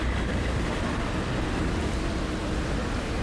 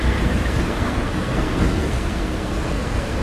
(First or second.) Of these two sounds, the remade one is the second